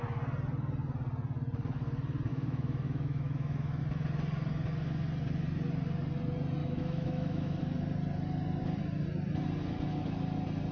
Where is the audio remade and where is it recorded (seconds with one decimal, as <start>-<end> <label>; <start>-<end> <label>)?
0.0-2.3 recorded; 2.3-3.8 remade; 3.8-6.6 recorded; 6.6-7.6 remade; 7.6-10.7 recorded